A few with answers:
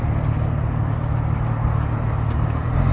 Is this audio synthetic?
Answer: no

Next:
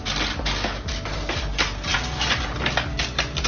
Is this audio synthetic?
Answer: no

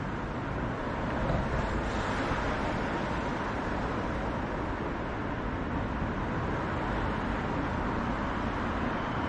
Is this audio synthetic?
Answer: no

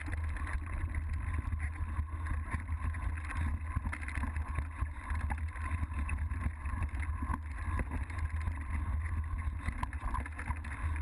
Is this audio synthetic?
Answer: no